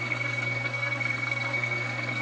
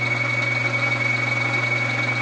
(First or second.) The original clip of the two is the second